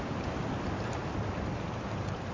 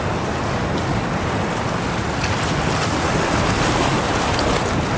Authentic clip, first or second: second